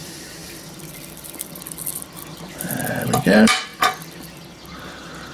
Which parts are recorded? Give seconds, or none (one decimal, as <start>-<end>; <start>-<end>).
none